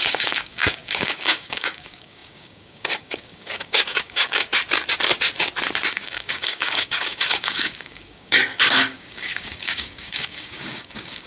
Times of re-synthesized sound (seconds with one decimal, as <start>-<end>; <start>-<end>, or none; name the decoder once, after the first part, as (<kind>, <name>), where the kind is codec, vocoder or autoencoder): 0.0-4.5 (codec, DAC); 5.9-11.3